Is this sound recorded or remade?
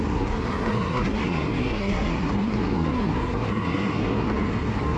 remade